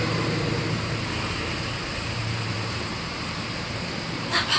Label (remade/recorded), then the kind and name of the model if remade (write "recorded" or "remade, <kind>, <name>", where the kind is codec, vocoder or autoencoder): remade, vocoder, BigVGAN v2